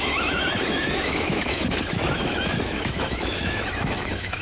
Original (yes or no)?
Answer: no